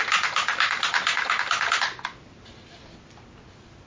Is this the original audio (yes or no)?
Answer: yes